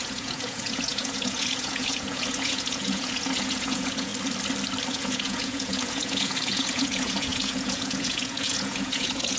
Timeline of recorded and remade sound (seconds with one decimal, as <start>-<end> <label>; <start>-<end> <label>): 0.0-4.1 remade; 4.1-4.9 recorded; 4.9-9.4 remade